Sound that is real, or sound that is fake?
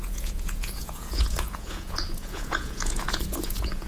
fake